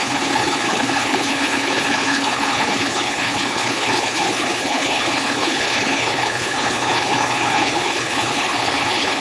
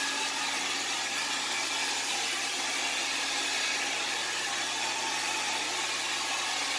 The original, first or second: second